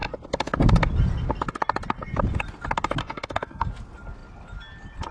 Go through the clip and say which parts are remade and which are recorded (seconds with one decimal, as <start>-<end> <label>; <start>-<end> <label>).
0.0-3.0 recorded; 3.0-3.7 remade; 3.7-5.1 recorded